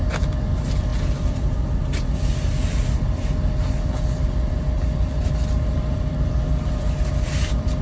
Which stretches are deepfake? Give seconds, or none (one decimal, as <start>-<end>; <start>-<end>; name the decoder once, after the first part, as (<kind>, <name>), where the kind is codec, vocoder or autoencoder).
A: none